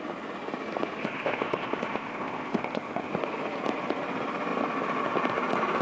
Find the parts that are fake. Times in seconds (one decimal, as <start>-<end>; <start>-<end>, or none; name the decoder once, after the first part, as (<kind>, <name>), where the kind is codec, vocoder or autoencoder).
1.0-3.1 (codec, ZipCodec)